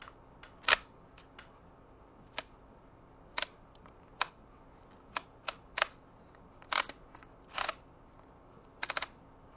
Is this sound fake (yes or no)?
no